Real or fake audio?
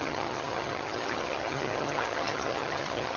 fake